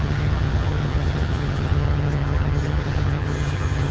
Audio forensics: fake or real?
fake